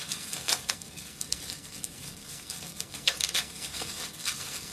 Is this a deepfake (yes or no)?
yes